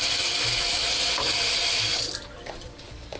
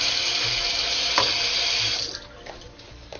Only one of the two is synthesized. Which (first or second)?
first